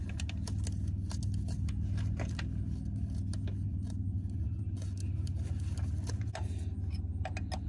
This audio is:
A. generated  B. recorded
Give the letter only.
B